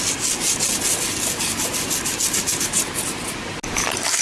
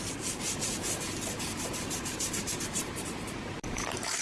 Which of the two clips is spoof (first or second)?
second